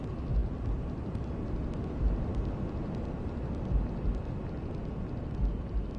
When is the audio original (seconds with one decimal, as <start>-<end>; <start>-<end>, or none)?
0.0-6.0